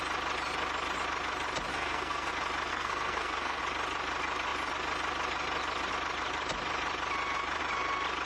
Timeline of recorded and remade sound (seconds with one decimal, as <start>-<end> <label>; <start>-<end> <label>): 0.0-1.7 recorded; 1.7-2.3 remade; 2.3-2.7 recorded; 2.7-3.6 remade; 3.6-8.3 recorded

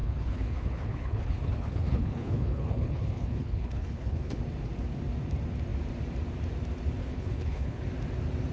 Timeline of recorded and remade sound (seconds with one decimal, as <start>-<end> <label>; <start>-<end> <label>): 0.0-4.4 remade; 4.4-7.0 recorded; 7.0-7.8 remade; 7.8-8.5 recorded

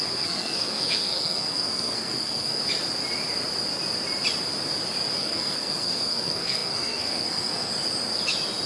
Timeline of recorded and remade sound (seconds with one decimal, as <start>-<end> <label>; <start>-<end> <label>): 0.0-2.6 remade; 2.6-5.2 recorded; 5.2-7.7 remade; 7.7-8.7 recorded

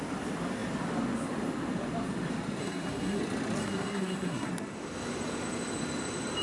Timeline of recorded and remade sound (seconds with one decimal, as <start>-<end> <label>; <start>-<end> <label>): 0.0-2.6 recorded; 2.6-3.2 remade; 3.2-3.6 recorded; 3.6-4.5 remade; 4.5-6.4 recorded

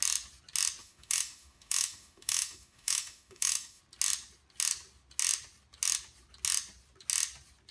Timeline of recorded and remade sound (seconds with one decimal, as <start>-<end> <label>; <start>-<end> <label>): 0.0-0.8 recorded; 0.8-3.8 remade; 3.8-7.7 recorded

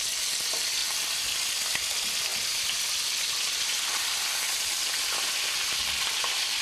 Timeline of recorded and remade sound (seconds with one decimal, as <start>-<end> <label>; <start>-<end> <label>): 0.0-0.8 recorded; 0.8-1.4 remade; 1.4-6.6 recorded